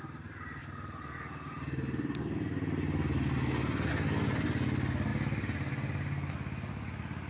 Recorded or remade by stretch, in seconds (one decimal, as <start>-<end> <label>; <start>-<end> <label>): 0.0-7.3 recorded